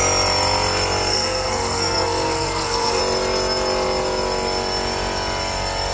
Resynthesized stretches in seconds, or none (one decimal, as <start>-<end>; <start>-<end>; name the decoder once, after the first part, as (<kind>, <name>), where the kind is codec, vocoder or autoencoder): 1.1-3.0 (codec, SNAC)